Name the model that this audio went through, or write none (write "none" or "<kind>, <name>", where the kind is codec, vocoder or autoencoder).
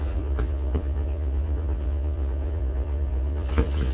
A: vocoder, Vocos